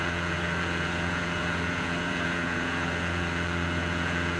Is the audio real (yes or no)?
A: no